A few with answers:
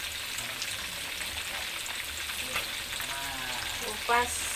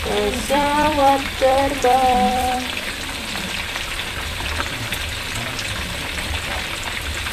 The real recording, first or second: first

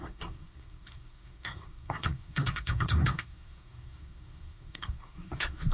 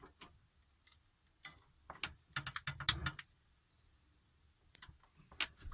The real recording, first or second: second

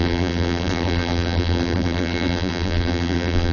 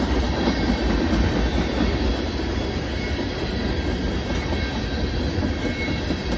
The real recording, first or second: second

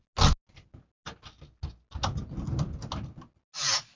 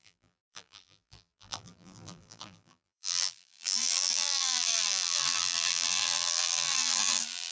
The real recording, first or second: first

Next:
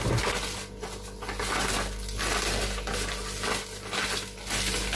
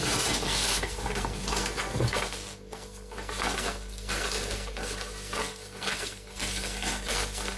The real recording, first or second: first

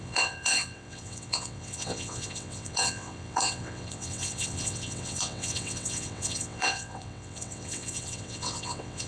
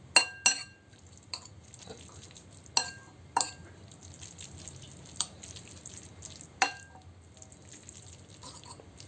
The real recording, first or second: second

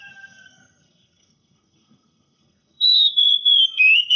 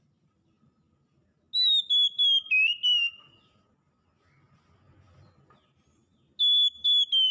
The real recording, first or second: second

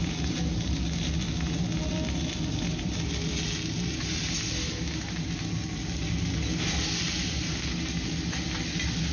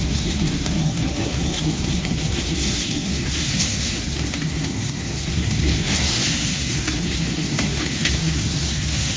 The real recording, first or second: first